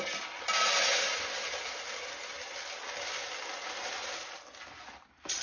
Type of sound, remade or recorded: recorded